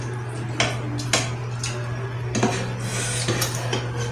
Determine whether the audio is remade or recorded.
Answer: recorded